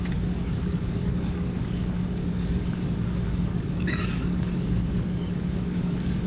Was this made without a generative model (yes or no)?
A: no